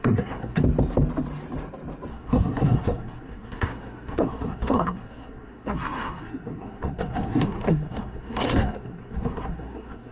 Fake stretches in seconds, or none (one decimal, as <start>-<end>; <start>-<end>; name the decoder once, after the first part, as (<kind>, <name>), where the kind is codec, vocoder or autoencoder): 0.0-0.6 (codec, SNAC); 2.1-10.1